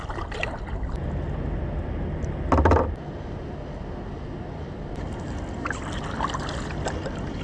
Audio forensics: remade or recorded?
recorded